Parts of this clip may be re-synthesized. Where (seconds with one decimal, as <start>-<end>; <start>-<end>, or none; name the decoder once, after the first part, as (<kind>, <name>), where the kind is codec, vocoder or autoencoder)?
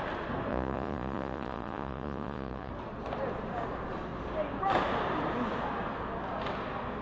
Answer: 0.5-2.7 (vocoder, Vocos)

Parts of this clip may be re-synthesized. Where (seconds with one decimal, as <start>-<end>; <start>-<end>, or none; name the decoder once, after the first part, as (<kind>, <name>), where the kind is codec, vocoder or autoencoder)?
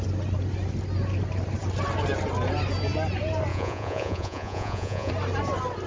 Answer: 3.5-5.1 (vocoder, Vocos)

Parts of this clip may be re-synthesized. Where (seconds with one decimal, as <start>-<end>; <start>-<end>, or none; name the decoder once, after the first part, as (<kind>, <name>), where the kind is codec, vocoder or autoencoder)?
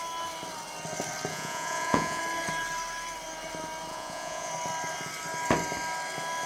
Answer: 1.3-2.2 (vocoder, Vocos); 3.9-4.5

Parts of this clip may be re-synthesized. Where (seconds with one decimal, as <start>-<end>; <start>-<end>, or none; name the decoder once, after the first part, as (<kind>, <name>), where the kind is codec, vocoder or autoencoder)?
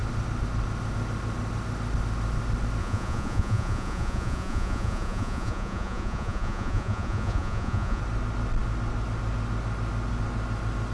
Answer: 2.8-8.0 (vocoder, Vocos)